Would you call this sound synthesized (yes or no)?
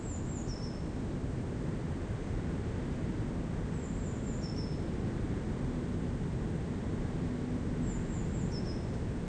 no